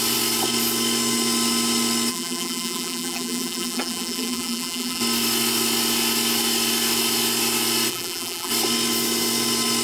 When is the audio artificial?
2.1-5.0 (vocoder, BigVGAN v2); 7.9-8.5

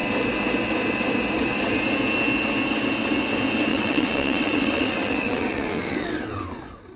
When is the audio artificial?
3.7-6.6 (vocoder, WaveNeXt)

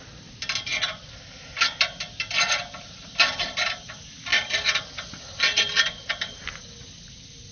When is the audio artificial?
none

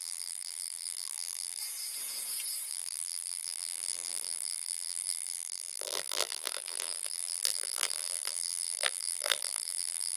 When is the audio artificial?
0.0-1.6 (vocoder, BigVGAN v2); 2.7-10.2

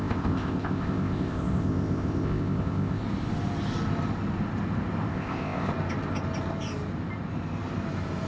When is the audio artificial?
0.0-3.0 (codec, ZipCodec); 5.1-5.7

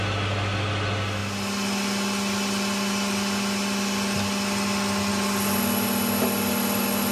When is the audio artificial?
none

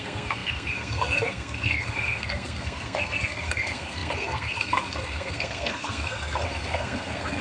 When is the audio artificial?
0.0-7.4 (codec, SNAC)